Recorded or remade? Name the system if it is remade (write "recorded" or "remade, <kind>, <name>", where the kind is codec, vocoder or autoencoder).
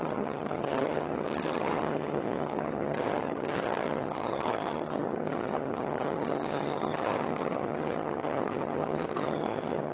remade, vocoder, HiFi-GAN